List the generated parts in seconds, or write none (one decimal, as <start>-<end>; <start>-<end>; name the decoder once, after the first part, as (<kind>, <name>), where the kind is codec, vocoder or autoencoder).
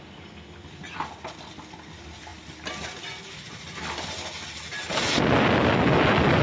none